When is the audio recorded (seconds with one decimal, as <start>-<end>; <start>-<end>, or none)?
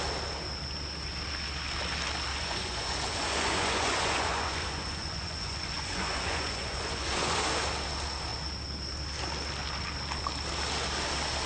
0.0-2.3; 7.4-11.5